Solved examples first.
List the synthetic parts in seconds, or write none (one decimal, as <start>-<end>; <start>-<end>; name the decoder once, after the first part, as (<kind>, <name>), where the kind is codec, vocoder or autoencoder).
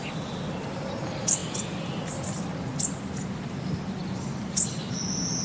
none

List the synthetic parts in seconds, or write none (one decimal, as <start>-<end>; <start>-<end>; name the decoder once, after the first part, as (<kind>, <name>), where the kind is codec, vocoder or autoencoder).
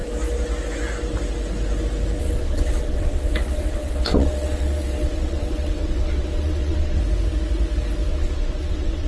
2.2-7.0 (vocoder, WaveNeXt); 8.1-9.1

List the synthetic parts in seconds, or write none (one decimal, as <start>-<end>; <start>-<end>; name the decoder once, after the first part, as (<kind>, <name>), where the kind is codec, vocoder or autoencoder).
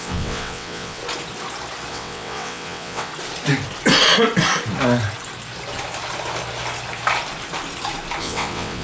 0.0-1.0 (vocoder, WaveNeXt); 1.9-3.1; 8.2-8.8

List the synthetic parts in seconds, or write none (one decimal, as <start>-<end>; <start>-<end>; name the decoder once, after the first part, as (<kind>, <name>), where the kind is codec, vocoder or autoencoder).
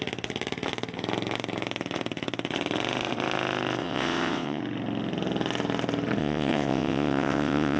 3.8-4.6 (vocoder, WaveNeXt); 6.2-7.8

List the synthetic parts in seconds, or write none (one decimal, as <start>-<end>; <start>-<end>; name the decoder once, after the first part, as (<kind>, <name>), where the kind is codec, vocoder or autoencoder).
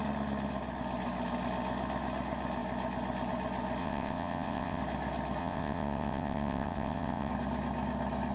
3.8-4.8 (vocoder, WaveNeXt); 5.4-7.3